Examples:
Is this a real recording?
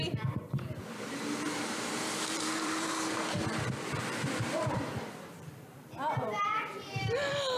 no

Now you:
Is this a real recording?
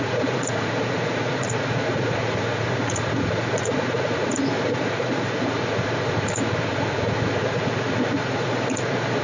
no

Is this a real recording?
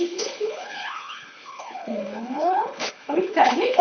no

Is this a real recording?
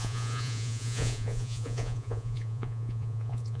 no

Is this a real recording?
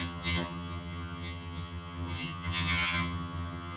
no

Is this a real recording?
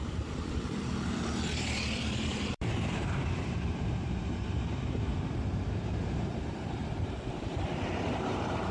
no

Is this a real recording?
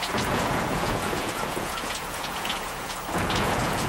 no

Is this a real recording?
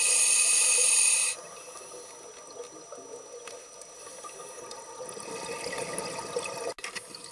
yes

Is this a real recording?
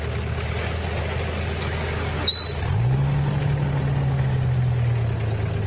yes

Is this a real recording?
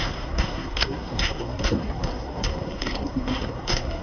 no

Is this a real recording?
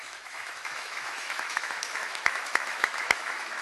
no